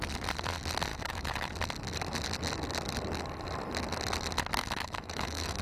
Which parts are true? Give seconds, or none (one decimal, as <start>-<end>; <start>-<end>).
0.0-0.9; 1.5-4.6